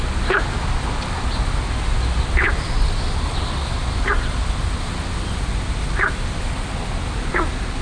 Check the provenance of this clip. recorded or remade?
recorded